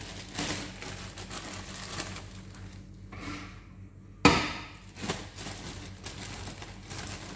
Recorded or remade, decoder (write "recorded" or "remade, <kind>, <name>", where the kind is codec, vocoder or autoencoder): recorded